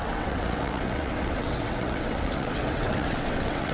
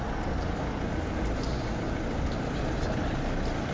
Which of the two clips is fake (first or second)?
first